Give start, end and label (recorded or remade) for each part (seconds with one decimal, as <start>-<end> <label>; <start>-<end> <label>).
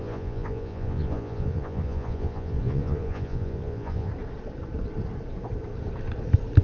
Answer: 0.0-4.1 remade; 4.1-6.6 recorded